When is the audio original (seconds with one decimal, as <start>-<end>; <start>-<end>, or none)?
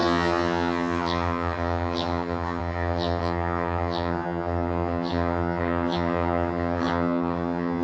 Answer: none